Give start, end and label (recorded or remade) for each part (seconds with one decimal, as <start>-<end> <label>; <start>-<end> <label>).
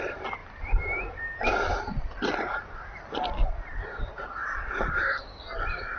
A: 0.0-6.0 recorded